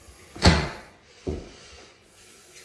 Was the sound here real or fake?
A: fake